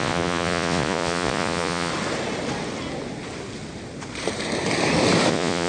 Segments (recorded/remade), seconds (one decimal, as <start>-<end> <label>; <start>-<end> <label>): 0.0-1.9 remade; 1.9-5.3 recorded; 5.3-5.7 remade